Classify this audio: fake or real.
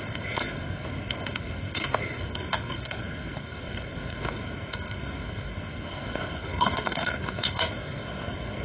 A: fake